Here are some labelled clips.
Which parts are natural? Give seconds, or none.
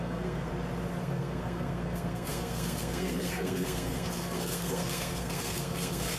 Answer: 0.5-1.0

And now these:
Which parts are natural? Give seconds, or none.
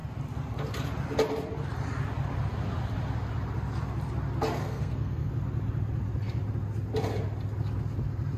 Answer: 0.0-4.6; 5.3-8.4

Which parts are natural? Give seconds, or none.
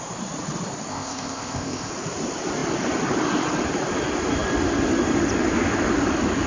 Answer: 0.0-0.9; 1.9-6.5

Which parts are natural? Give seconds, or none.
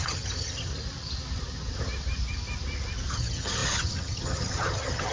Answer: 0.7-3.1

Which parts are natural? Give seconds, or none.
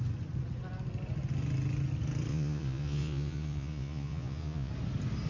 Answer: 0.0-2.3; 4.7-5.3